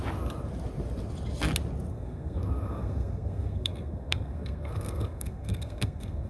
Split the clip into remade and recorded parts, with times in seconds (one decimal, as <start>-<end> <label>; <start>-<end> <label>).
0.0-1.9 recorded; 1.9-6.3 remade